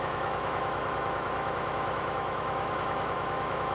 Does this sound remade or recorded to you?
remade